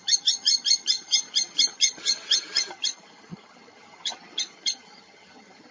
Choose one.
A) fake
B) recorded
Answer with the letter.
A